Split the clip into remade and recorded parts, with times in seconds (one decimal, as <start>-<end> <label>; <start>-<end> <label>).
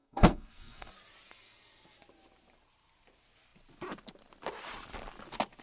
0.0-0.9 remade; 0.9-5.6 recorded